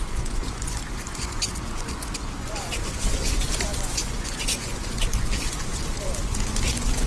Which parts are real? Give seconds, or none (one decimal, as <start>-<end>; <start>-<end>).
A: none